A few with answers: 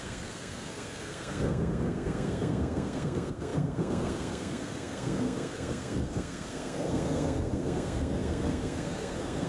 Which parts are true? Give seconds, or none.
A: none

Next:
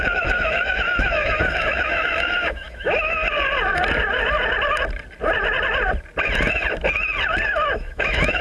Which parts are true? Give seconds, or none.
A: 3.2-7.7

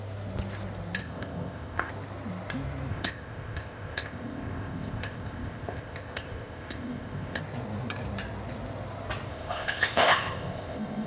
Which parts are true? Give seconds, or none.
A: 0.0-1.0; 1.9-2.9; 7.4-9.3

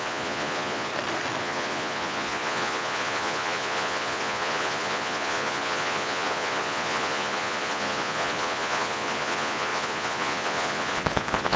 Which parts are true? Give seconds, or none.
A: 0.9-1.4

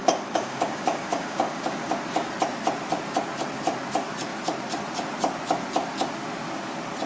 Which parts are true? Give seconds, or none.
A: 1.9-7.1